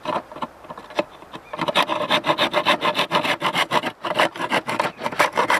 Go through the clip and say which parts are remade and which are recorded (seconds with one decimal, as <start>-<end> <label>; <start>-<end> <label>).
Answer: 0.0-1.9 remade; 1.9-5.6 recorded